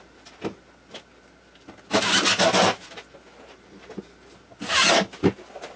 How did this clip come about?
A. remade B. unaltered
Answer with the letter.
B